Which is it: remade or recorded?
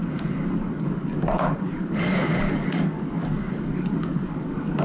remade